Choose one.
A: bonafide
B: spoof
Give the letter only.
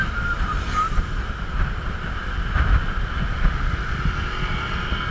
A